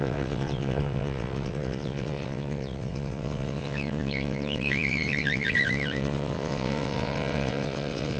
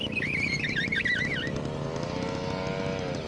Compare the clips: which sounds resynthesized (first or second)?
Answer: first